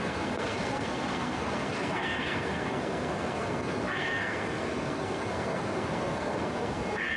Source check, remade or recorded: remade